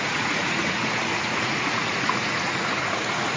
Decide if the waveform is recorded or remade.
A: remade